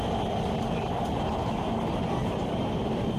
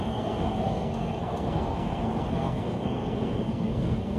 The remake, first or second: second